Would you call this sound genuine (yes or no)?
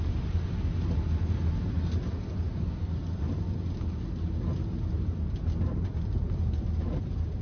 yes